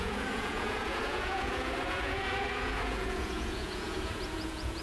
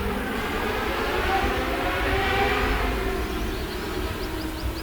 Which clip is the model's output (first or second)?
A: first